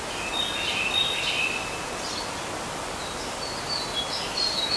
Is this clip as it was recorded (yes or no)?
yes